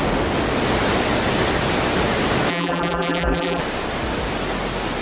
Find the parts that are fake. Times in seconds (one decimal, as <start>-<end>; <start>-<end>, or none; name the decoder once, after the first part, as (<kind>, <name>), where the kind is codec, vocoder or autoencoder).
2.5-3.6 (vocoder, BigVGAN v2)